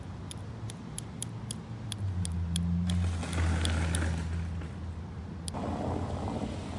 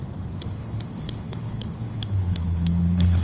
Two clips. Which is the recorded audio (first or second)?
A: first